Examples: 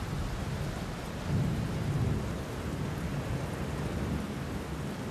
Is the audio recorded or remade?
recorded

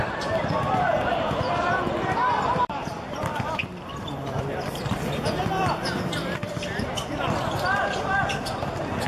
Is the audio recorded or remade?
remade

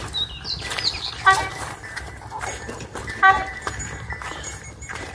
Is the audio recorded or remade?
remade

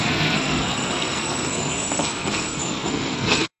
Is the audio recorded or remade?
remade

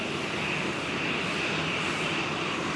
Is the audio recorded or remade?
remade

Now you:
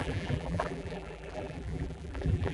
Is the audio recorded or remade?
remade